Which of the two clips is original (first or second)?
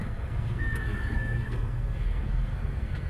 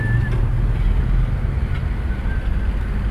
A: second